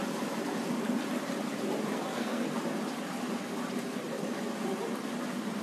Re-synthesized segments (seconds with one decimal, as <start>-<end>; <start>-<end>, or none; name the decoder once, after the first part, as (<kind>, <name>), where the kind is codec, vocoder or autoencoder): 1.9-2.5 (codec, SNAC)